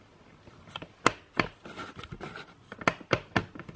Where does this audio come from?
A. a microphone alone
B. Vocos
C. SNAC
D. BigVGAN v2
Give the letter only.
A